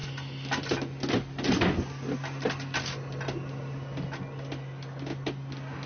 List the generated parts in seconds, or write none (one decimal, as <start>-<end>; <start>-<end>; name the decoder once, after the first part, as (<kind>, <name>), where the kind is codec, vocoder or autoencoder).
none